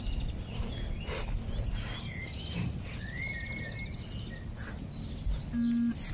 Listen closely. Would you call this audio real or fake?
real